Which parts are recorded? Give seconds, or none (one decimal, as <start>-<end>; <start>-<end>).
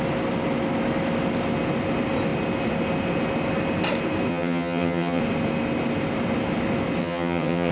0.0-4.3; 5.2-7.0